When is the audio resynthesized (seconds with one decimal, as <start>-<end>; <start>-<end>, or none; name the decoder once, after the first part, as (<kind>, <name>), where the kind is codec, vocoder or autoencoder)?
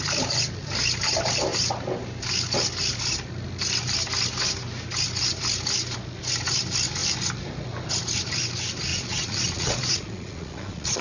8.9-11.0 (vocoder, Vocos)